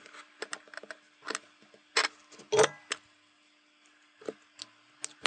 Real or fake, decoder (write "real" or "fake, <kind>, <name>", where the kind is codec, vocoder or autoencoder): real